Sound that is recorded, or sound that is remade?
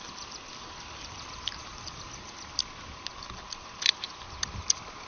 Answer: recorded